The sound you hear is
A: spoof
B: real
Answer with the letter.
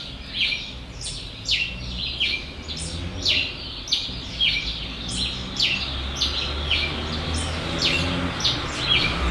B